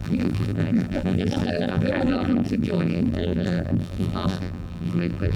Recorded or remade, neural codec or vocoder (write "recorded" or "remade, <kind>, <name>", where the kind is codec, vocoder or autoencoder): remade, vocoder, BigVGAN v2